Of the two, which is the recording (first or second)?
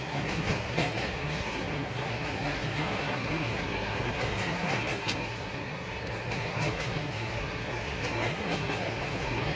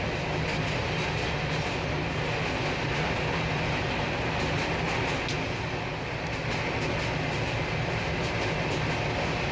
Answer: second